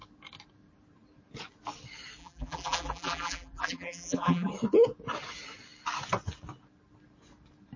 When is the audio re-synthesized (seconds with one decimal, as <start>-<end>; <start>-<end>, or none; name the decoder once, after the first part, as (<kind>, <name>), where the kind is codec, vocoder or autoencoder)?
2.2-4.5 (vocoder, BigVGAN v2)

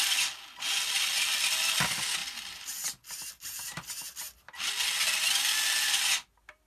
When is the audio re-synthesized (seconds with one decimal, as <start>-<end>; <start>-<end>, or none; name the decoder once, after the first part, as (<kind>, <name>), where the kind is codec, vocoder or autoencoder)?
2.2-4.7 (vocoder, BigVGAN v2)

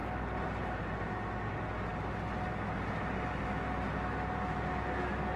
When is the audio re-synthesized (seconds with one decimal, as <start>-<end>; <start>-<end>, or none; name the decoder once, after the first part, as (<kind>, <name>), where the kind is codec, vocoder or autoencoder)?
none

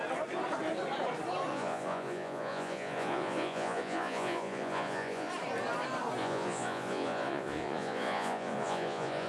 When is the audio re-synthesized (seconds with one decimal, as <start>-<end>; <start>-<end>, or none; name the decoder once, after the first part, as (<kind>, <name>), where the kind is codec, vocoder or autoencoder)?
1.5-5.3 (vocoder, Vocos); 6.2-9.3

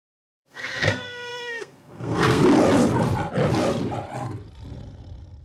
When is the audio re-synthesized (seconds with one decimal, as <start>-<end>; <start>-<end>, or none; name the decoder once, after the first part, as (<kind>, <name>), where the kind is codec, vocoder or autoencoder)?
0.0-2.4 (codec, SNAC)

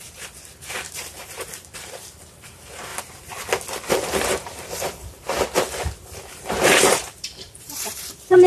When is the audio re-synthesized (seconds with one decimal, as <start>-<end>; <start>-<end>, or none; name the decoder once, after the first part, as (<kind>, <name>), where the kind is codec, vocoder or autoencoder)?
0.0-2.9 (vocoder, BigVGAN v2); 3.9-8.5

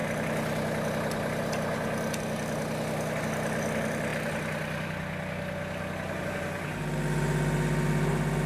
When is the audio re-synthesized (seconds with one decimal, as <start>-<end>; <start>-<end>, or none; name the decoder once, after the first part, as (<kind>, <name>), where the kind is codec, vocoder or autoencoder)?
none